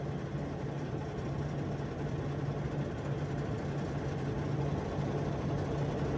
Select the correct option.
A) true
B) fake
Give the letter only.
A